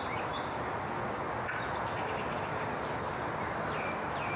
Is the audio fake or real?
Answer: real